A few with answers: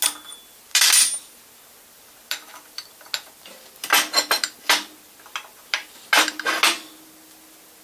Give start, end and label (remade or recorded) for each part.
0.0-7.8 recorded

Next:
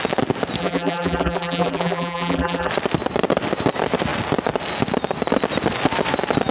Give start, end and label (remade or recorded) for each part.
0.0-0.6 recorded; 0.6-2.7 remade; 2.7-6.5 recorded